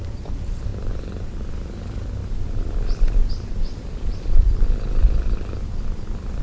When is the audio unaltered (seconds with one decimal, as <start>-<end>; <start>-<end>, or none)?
0.0-4.1